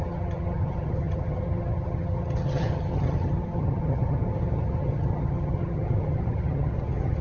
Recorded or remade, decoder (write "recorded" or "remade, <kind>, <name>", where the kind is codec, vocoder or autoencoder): remade, vocoder, HiFi-GAN